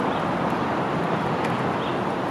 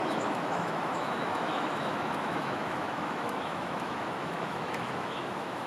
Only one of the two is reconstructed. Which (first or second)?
second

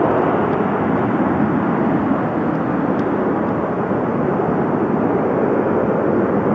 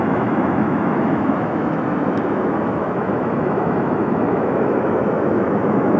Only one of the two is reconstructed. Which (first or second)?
second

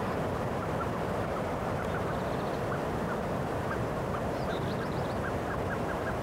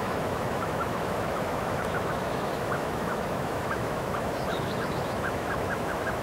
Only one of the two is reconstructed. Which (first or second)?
second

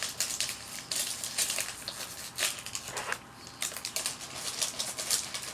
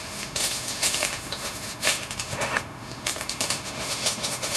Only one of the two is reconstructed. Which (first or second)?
second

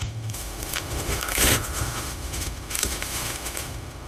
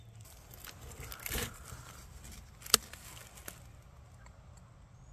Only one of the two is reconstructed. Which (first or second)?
first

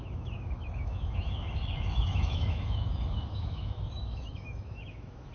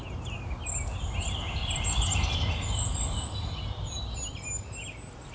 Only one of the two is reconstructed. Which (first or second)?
first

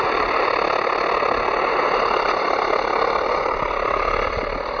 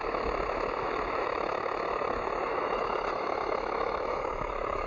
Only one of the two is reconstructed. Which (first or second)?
second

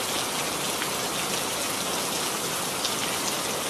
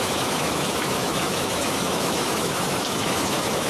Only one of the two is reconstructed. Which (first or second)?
second